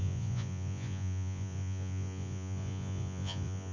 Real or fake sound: fake